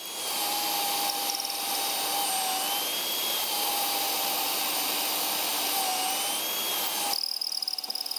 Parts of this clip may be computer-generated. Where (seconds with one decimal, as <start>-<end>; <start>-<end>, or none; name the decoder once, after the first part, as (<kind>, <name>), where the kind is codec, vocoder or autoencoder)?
2.9-5.9 (vocoder, BigVGAN v2)